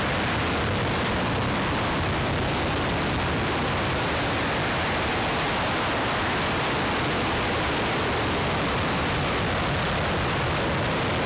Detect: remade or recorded recorded